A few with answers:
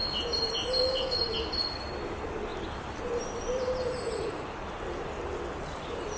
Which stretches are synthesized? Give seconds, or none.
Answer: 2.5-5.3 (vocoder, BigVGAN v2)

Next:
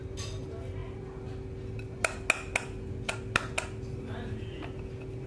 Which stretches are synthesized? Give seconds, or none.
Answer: none

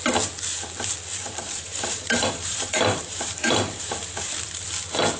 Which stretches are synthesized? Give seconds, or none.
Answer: 1.2-4.3 (vocoder, BigVGAN v2)

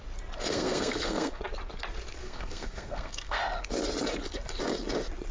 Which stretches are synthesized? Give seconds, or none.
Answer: 0.5-1.4 (codec, SNAC); 2.2-3.4